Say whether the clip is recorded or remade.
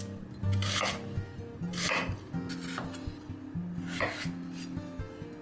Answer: recorded